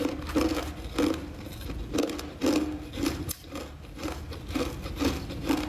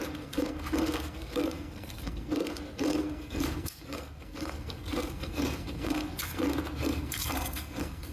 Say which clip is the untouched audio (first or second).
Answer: first